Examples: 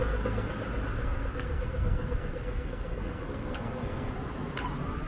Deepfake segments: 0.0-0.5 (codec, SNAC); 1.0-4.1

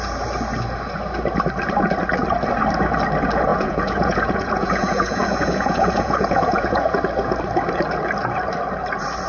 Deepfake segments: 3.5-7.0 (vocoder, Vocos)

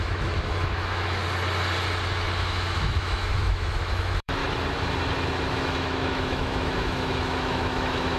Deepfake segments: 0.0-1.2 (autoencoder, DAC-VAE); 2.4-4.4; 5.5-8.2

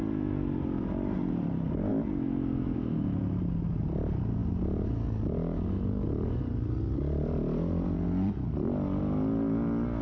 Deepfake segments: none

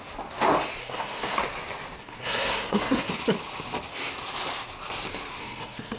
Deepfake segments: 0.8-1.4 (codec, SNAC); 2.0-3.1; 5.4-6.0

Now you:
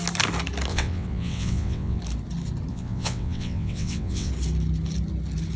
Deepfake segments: 0.7-2.0 (vocoder, WaveNeXt); 2.7-4.3